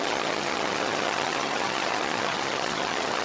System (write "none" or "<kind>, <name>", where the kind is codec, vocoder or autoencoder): vocoder, HiFi-GAN